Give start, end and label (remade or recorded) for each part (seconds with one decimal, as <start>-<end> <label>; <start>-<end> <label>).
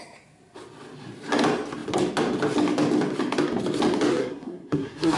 0.0-4.1 recorded; 4.1-5.2 remade